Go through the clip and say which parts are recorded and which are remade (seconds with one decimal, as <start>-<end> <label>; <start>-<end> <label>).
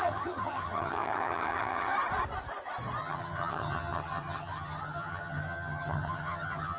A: 0.0-1.9 remade; 1.9-3.0 recorded; 3.0-6.8 remade